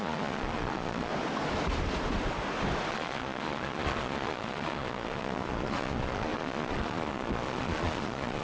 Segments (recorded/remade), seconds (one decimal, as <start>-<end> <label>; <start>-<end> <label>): 0.0-1.1 remade; 1.1-2.9 recorded; 2.9-8.4 remade